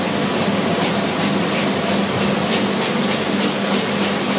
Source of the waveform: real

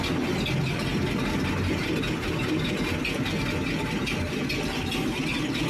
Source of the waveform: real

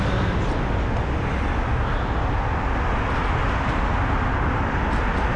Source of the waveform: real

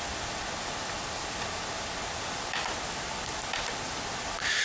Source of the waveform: real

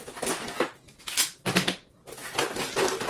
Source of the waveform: real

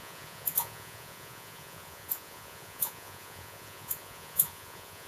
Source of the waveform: fake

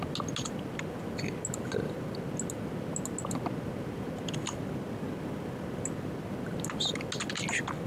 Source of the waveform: real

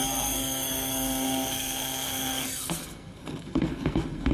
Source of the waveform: fake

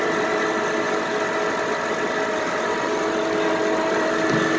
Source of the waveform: real